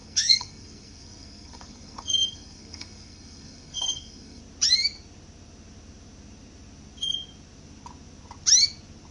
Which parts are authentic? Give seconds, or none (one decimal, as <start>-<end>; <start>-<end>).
4.4-9.1

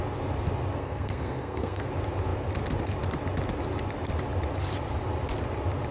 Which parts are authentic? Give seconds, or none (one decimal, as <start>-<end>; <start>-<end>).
0.0-0.8; 1.9-5.9